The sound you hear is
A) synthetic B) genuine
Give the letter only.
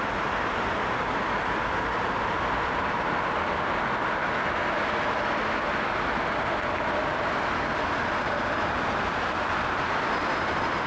B